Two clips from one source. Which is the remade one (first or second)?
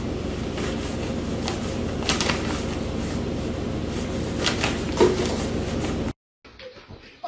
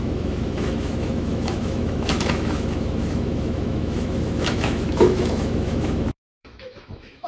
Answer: second